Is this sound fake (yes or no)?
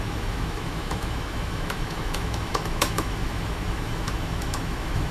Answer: yes